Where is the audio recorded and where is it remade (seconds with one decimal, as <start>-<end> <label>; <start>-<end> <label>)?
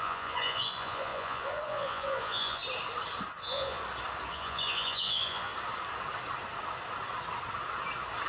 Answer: 0.0-2.6 remade; 2.6-3.4 recorded; 3.4-3.8 remade; 3.8-4.3 recorded; 4.3-5.5 remade; 5.5-8.3 recorded